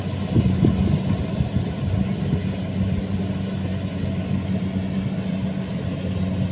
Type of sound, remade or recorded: recorded